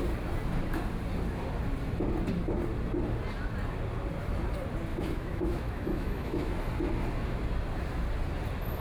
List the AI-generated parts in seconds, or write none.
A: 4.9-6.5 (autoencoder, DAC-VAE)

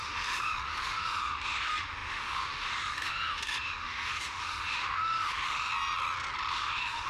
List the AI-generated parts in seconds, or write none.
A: 0.0-5.7 (autoencoder, DAC-VAE); 6.5-7.1